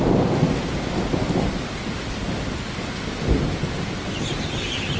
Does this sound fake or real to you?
real